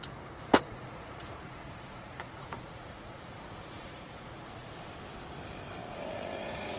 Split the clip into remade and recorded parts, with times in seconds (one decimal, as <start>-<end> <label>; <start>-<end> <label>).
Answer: 0.0-0.6 recorded; 0.6-4.7 remade; 4.7-5.8 recorded; 5.8-6.8 remade